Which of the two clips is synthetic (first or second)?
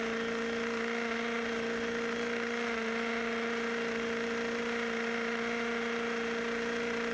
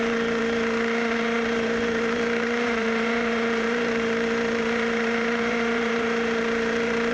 second